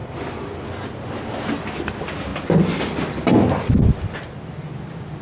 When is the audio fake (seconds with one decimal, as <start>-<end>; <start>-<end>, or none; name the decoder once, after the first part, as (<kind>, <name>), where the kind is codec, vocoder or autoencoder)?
none

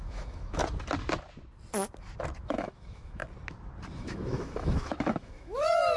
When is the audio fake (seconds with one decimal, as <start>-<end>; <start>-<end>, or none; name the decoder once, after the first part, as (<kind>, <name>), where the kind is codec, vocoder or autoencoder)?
0.0-0.6 (autoencoder, DAC-VAE); 2.4-3.2; 4.0-6.0